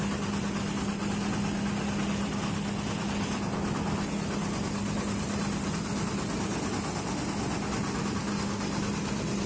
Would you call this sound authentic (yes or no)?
yes